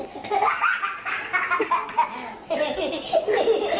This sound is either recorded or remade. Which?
recorded